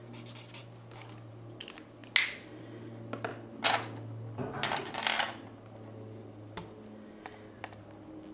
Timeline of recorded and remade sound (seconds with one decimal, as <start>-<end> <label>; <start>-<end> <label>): 0.0-8.3 recorded